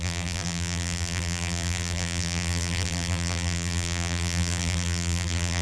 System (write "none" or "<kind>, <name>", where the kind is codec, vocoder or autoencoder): vocoder, BigVGAN v2